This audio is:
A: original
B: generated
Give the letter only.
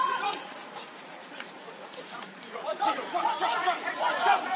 B